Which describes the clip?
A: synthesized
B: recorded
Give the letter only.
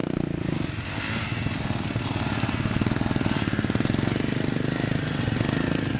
B